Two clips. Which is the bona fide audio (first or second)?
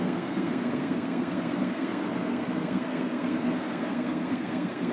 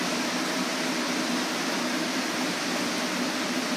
second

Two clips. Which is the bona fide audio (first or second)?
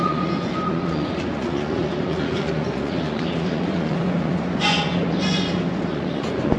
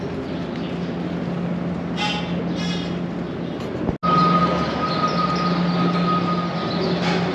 second